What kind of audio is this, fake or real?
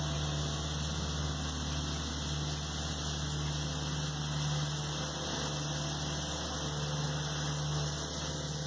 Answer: real